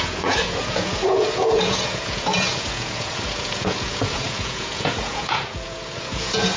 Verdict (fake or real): fake